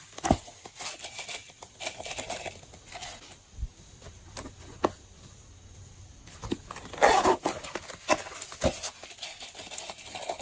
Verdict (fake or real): real